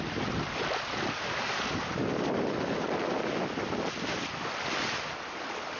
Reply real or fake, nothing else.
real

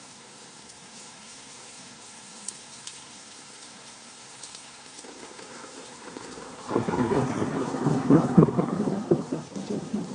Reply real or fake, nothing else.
fake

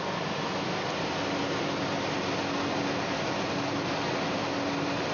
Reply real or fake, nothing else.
real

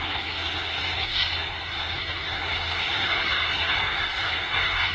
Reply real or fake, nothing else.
fake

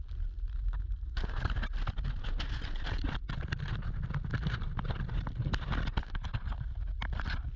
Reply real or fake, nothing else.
real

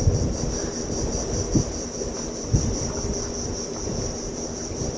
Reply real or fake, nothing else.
real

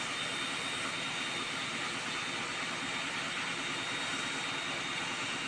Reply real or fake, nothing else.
real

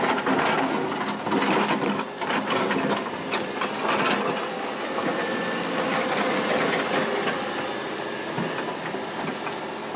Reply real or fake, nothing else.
real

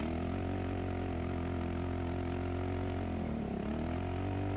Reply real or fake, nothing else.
real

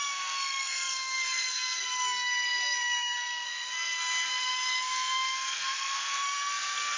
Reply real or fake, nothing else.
fake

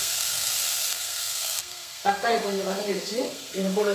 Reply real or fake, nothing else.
fake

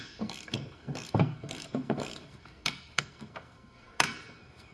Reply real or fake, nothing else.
fake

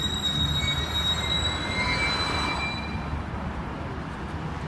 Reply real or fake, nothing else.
real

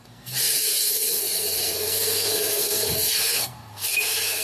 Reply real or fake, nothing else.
fake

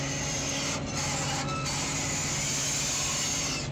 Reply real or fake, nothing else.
real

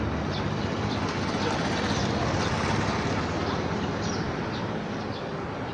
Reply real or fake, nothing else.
real